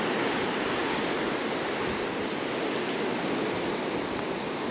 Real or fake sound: real